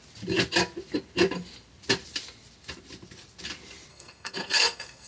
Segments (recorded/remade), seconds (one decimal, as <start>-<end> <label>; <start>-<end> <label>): 0.0-3.9 recorded; 3.9-5.1 remade